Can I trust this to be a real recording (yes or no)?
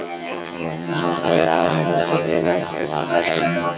no